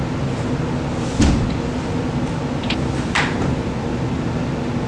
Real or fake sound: real